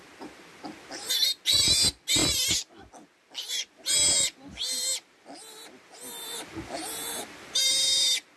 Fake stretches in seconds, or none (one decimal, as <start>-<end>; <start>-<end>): none